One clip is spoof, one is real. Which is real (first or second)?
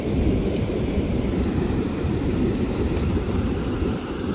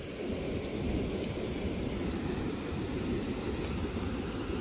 second